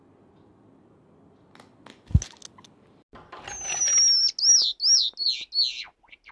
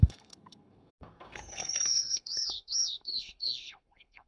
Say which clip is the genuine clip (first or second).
first